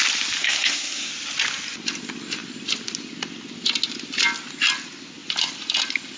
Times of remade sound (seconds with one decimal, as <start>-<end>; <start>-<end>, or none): 0.4-1.1